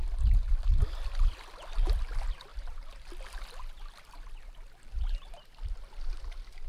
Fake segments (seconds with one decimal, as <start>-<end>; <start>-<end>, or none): 2.5-3.1